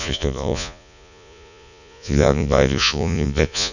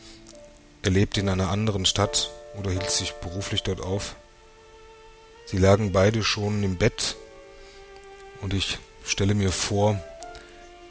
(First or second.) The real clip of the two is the second